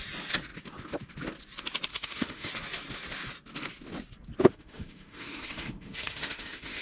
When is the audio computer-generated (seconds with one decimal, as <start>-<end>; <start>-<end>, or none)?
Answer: 1.9-2.5; 4.5-6.8